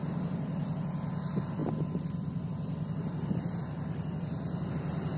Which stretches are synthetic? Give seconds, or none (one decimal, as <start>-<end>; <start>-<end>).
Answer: none